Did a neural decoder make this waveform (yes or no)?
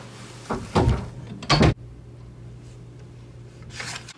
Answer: no